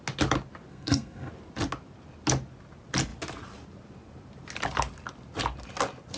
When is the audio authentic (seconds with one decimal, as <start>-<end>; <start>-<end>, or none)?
0.0-0.7; 1.3-6.2